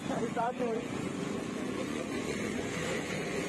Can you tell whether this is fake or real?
fake